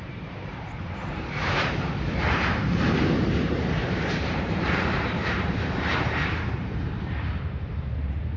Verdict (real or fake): fake